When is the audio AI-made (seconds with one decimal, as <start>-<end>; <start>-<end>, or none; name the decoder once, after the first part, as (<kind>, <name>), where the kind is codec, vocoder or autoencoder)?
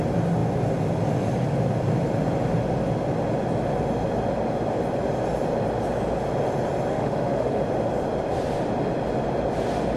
6.9-7.6 (autoencoder, DAC-VAE)